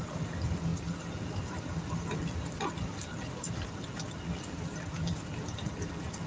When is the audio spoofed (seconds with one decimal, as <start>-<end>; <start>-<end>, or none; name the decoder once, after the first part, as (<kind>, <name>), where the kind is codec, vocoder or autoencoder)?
none